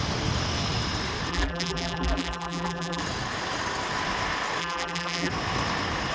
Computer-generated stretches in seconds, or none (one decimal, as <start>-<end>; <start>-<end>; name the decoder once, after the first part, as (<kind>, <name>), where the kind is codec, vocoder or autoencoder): 1.3-3.0 (vocoder, BigVGAN v2); 4.6-5.3